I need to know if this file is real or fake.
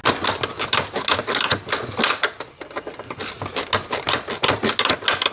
real